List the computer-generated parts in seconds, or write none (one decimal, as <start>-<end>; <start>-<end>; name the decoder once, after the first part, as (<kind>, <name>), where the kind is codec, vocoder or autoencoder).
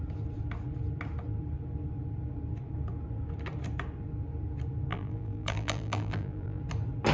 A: 4.9-6.6 (vocoder, BigVGAN v2)